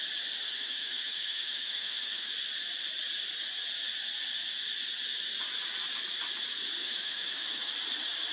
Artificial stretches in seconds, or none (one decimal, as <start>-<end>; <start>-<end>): 0.4-2.3; 6.8-7.7